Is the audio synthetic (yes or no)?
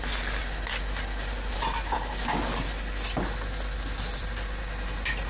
no